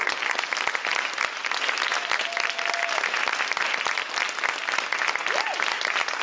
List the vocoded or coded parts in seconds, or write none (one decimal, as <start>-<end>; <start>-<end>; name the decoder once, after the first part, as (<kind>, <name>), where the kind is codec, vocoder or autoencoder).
none